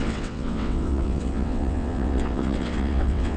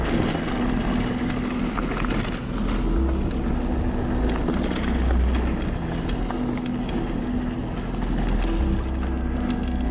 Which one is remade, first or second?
first